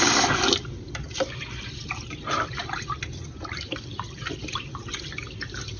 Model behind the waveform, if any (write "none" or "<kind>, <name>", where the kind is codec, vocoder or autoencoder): vocoder, BigVGAN v2